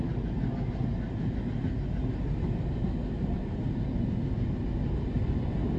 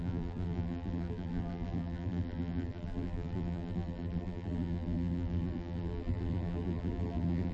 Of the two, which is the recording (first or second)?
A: first